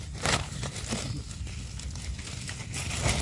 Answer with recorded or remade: recorded